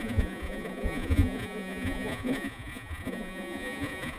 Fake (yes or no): yes